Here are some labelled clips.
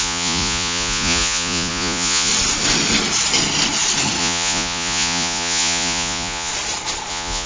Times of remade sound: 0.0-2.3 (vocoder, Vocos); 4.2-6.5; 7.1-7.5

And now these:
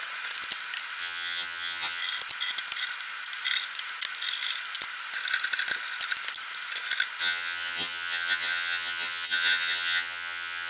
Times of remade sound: 1.0-2.0 (vocoder, HiFi-GAN); 7.2-10.7

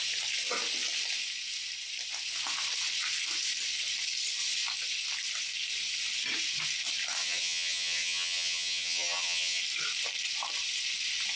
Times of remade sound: 7.2-9.6 (vocoder, HiFi-GAN)

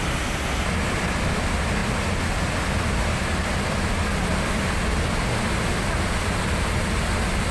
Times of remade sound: none

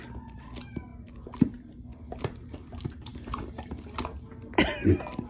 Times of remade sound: none

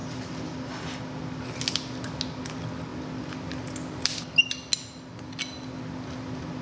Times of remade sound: 0.0-1.4 (vocoder, BigVGAN v2)